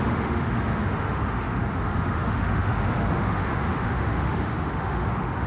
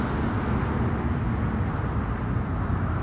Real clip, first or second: second